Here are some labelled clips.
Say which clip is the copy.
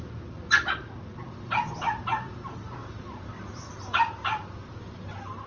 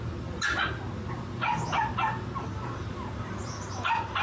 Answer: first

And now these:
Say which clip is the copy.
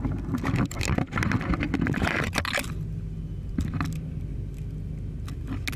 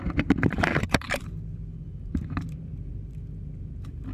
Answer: second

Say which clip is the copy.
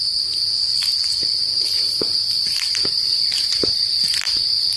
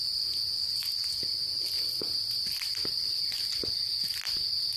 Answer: first